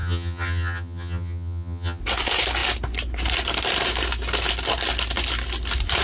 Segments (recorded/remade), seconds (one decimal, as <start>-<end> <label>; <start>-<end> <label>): 0.0-2.0 remade; 2.0-6.0 recorded